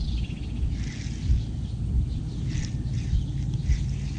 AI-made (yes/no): no